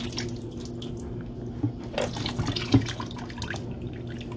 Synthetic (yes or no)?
no